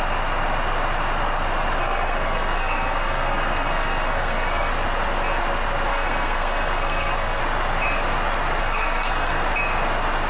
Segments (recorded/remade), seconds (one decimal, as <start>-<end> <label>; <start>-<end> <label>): 0.0-1.8 recorded; 1.8-4.7 remade; 4.7-5.9 recorded; 5.9-7.4 remade; 7.4-8.6 recorded; 8.6-9.4 remade; 9.4-10.3 recorded